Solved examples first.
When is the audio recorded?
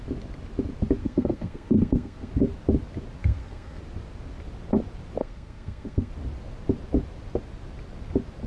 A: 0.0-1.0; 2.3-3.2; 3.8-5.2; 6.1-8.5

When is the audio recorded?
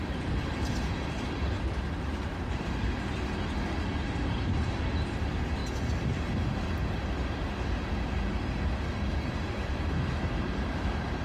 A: 3.1-4.6; 5.6-9.1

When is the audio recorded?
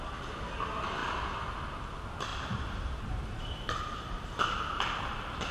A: 0.0-2.3; 4.8-5.5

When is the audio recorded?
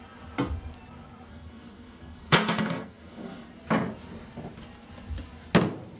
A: 0.0-1.3; 3.5-6.0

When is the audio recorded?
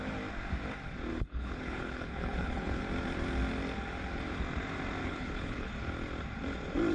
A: 0.0-1.1; 2.8-5.0; 5.7-6.9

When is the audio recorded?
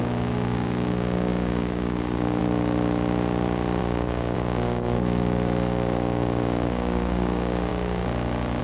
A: 2.4-3.8; 7.7-8.6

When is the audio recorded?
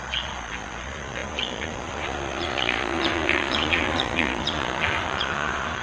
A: none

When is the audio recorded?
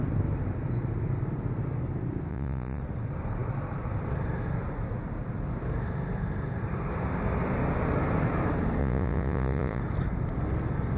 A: 0.0-2.3; 2.8-8.8; 9.8-11.0